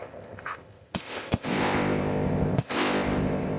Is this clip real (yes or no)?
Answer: no